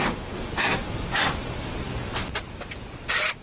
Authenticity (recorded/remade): recorded